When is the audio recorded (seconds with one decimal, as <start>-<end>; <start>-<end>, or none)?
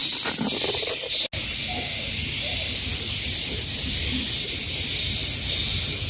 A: 0.0-6.1